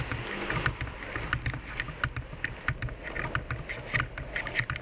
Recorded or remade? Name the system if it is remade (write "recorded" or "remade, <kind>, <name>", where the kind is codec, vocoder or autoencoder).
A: recorded